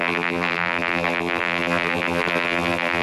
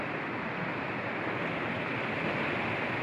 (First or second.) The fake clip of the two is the first